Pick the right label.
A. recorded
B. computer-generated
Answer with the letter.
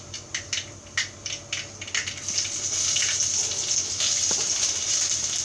A